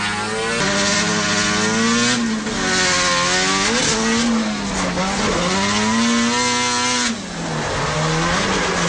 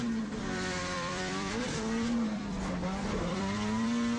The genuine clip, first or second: first